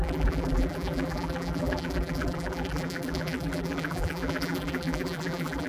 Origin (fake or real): fake